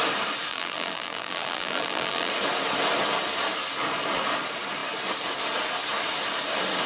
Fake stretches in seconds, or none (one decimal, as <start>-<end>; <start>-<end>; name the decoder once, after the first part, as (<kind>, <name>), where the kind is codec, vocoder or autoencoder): 0.5-2.3 (vocoder, BigVGAN v2)